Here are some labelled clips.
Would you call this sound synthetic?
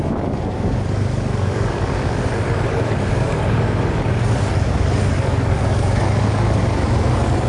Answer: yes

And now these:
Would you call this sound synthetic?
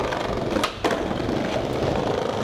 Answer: no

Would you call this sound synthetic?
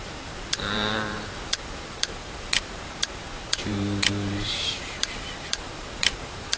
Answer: yes